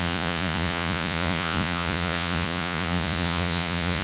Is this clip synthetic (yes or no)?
yes